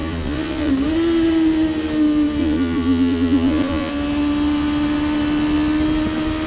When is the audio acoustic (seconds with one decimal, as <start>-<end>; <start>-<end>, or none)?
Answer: 0.7-2.4; 3.9-6.5